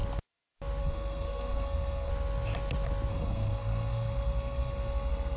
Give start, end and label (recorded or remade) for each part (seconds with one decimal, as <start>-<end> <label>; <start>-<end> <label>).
0.0-0.8 recorded; 0.8-2.1 remade; 2.1-3.1 recorded; 3.1-5.4 remade